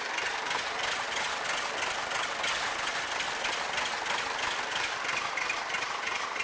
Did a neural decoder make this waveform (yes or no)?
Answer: no